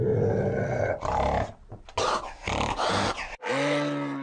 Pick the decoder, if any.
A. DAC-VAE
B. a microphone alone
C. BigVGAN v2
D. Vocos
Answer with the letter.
B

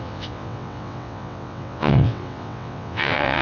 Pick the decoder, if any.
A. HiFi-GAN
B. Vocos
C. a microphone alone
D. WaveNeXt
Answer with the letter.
D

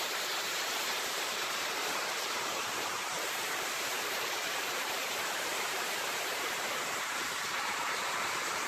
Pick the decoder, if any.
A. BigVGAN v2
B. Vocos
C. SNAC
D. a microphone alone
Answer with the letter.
A